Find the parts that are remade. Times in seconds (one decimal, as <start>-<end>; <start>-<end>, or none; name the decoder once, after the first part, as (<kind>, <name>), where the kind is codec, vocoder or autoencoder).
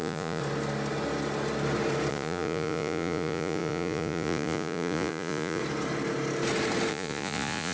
0.0-0.4 (vocoder, Vocos); 2.1-5.6; 6.9-7.7